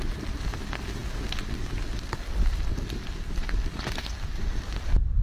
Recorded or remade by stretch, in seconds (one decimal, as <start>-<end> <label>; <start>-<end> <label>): 0.0-5.2 recorded